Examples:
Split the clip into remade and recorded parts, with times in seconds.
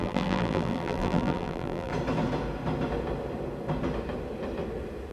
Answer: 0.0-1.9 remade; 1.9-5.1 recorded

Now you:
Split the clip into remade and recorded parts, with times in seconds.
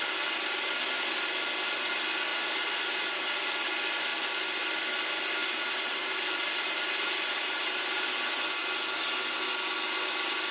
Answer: 0.0-2.3 recorded; 2.3-2.8 remade; 2.8-5.4 recorded; 5.4-8.1 remade; 8.1-10.5 recorded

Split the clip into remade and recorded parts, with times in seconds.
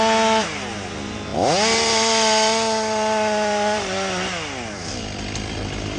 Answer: 0.0-1.3 recorded; 1.3-4.9 remade; 4.9-6.0 recorded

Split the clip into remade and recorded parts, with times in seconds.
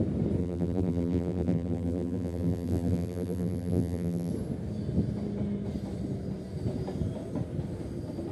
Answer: 0.0-0.4 recorded; 0.4-4.3 remade; 4.3-8.3 recorded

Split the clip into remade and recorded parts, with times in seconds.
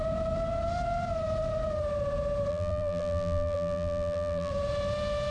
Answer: 0.0-2.5 recorded; 2.5-4.5 remade; 4.5-5.3 recorded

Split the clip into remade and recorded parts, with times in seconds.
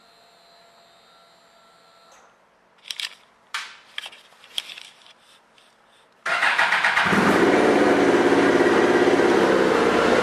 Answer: 0.0-2.0 recorded; 2.0-5.0 remade; 5.0-6.4 recorded; 6.4-7.9 remade; 7.9-10.2 recorded